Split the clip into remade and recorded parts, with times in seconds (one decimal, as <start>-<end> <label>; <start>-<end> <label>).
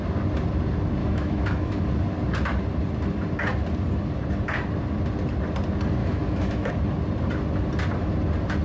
0.0-1.0 recorded; 1.0-1.8 remade; 1.8-6.0 recorded; 6.0-6.7 remade; 6.7-8.6 recorded